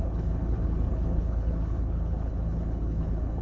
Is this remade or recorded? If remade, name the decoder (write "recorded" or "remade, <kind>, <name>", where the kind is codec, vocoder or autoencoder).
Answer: remade, codec, HILCodec